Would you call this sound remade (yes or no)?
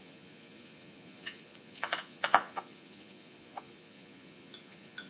yes